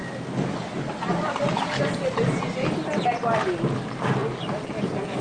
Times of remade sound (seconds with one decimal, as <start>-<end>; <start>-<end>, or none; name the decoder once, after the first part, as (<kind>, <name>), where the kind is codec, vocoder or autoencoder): none